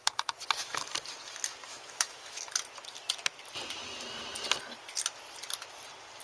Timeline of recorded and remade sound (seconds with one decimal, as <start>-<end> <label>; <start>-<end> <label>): 0.0-1.7 recorded; 1.7-2.4 remade; 2.4-6.2 recorded